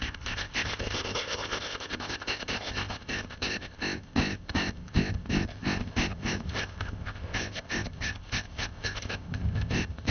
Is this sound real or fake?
fake